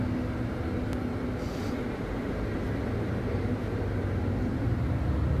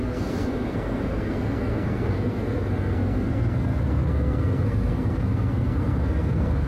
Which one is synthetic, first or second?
second